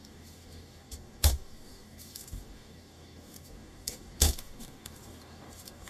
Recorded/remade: remade